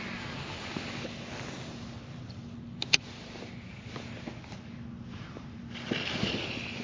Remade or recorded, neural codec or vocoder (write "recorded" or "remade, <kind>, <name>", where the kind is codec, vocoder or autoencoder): recorded